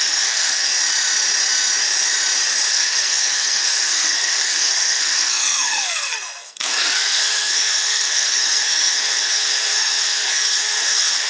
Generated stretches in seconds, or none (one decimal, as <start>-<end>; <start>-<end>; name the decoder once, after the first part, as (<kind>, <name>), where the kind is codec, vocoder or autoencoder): 0.0-0.7 (codec, SNAC); 2.7-11.3